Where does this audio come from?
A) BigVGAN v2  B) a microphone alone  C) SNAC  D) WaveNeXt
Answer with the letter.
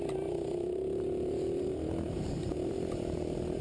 A